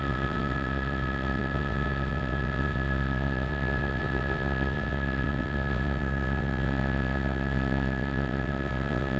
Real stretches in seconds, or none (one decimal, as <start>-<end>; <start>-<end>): none